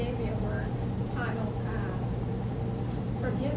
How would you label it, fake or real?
real